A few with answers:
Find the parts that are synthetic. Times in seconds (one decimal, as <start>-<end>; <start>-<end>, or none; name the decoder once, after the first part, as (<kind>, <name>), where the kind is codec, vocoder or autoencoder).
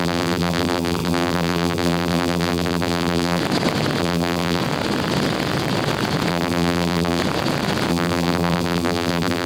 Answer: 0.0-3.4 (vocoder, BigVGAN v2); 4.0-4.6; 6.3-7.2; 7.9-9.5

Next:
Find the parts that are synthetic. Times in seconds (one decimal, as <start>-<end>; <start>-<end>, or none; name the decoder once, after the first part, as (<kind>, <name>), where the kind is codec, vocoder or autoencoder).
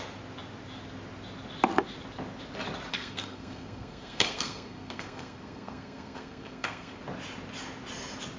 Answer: 2.9-7.0 (codec, SNAC)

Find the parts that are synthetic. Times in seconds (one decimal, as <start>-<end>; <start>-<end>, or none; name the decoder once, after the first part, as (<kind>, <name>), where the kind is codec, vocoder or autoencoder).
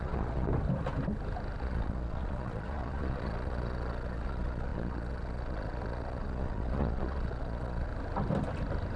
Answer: 0.0-0.5 (vocoder, Vocos); 1.6-7.9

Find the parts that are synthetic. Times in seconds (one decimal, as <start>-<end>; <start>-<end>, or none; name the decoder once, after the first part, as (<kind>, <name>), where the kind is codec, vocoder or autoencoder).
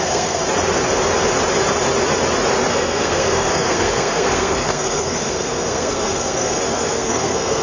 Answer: 0.0-0.4 (codec, SNAC); 2.7-7.6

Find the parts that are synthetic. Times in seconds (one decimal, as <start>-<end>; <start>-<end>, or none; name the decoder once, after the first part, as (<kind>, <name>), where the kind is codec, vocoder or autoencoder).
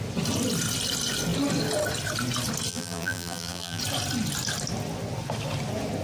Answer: 2.7-3.8 (vocoder, BigVGAN v2)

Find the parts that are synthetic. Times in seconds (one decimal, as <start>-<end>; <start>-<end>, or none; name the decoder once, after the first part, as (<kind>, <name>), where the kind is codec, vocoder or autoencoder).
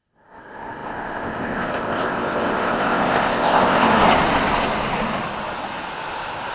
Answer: 0.0-3.9 (codec, ZipCodec)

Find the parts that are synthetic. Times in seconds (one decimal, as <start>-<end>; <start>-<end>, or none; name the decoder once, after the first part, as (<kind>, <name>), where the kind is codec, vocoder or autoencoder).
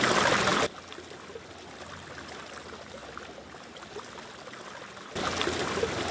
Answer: none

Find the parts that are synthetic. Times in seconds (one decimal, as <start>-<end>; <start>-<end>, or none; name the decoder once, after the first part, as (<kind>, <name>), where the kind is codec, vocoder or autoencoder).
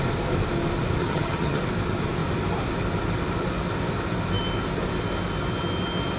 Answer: 1.0-1.6 (vocoder, HiFi-GAN)